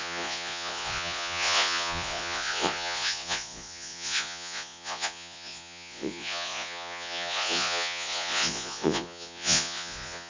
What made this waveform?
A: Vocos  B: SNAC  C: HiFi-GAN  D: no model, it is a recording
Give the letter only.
A